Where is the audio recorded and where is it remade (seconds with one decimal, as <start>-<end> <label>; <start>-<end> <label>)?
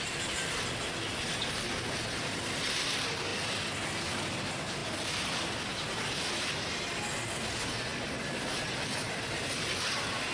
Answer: 0.0-10.3 recorded